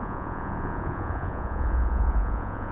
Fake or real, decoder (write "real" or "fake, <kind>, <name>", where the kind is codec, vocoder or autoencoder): fake, vocoder, Vocos